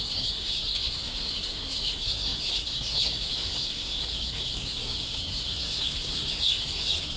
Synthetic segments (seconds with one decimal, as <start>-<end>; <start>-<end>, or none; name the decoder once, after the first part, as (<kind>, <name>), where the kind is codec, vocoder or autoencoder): 0.0-7.2 (codec, SNAC)